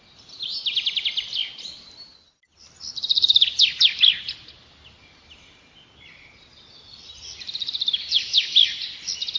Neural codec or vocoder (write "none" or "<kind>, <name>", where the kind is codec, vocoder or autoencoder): none